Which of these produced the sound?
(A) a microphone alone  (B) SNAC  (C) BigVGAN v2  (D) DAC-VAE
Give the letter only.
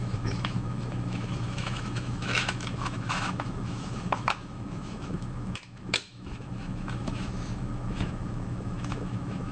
D